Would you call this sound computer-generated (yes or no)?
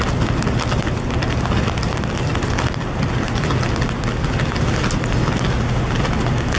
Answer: no